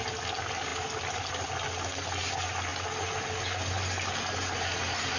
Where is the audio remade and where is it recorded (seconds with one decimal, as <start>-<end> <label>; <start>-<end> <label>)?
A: 0.0-5.2 recorded